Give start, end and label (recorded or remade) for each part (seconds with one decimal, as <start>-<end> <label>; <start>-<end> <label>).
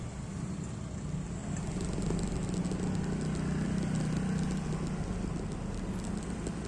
0.0-6.7 recorded